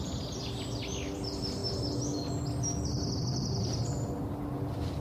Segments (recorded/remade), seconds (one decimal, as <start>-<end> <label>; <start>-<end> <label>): 0.0-1.6 remade; 1.6-3.2 recorded; 3.2-3.8 remade; 3.8-5.0 recorded